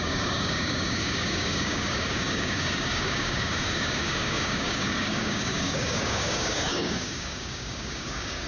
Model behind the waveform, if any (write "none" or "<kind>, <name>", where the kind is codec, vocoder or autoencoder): codec, DAC